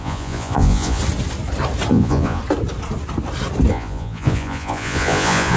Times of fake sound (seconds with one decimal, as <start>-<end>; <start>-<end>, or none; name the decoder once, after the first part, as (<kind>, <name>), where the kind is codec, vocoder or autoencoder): 0.0-1.0 (vocoder, Vocos); 1.9-2.4; 3.7-5.6

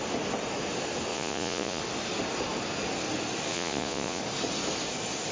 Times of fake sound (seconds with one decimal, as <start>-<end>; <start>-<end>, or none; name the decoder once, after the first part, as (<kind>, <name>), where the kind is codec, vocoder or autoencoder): 1.1-1.8 (vocoder, Vocos); 3.5-4.2

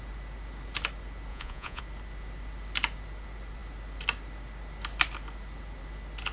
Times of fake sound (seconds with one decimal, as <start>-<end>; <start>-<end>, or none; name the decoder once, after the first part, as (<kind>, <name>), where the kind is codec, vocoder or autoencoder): 1.3-1.8 (vocoder, Vocos)

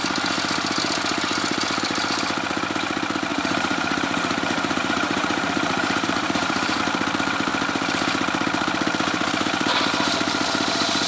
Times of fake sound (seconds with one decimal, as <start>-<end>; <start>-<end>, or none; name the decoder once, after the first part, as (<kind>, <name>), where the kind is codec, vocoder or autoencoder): 3.3-6.8 (vocoder, Vocos)

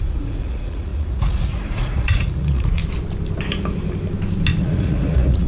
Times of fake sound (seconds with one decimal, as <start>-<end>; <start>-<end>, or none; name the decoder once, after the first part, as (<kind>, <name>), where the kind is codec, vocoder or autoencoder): 0.0-2.8 (vocoder, Vocos); 4.6-5.5

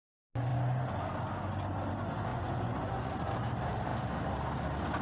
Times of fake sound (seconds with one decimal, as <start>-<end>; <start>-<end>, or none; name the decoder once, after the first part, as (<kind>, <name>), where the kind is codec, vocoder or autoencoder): 2.3-3.3 (vocoder, Vocos)

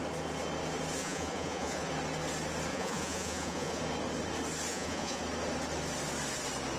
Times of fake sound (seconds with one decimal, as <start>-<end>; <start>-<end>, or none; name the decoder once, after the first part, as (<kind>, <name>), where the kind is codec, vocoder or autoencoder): 1.0-1.9 (vocoder, Vocos); 2.7-3.8; 4.7-5.2

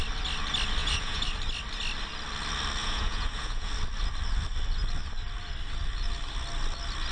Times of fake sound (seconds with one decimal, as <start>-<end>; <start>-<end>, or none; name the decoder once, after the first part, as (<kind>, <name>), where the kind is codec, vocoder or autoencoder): 0.8-1.3 (vocoder, Vocos); 2.8-3.7